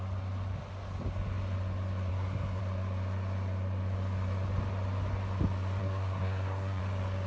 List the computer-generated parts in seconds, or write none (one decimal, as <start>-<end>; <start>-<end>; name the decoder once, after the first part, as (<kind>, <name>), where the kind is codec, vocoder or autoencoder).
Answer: 2.1-2.6 (codec, SNAC); 5.8-6.8